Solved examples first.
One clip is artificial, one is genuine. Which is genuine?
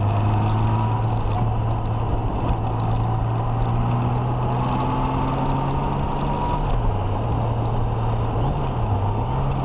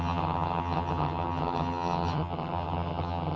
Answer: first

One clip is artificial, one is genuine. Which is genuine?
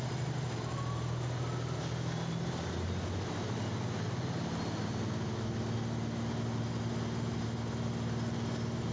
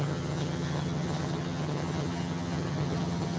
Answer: first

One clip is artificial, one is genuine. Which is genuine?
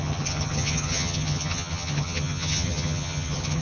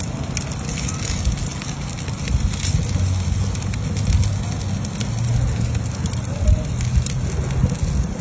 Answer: second